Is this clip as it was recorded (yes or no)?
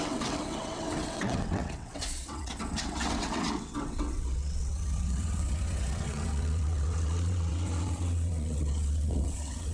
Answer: no